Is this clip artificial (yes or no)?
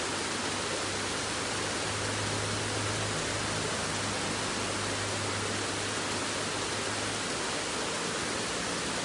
no